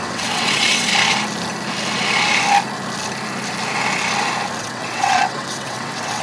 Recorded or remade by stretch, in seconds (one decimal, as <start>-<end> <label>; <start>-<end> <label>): 0.0-0.9 remade; 0.9-4.6 recorded; 4.6-6.2 remade